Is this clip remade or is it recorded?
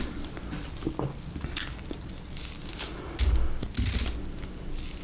recorded